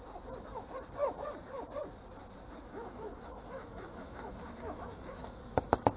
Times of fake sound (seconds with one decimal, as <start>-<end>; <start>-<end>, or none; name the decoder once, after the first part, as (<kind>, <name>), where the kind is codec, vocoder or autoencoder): 2.7-6.0 (autoencoder, DAC-VAE)